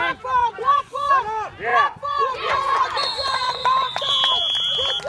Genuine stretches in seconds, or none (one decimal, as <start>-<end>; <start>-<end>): 0.0-0.4; 1.1-1.7; 4.1-5.1